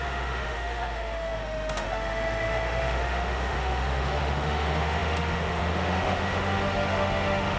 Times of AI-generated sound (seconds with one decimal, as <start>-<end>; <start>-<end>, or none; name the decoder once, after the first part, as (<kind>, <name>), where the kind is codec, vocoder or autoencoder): 0.0-7.6 (autoencoder, DAC-VAE)